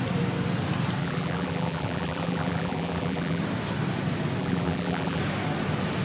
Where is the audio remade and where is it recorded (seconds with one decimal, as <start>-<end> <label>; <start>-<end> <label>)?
0.0-1.0 recorded; 1.0-3.4 remade; 3.4-4.4 recorded; 4.4-5.2 remade; 5.2-6.0 recorded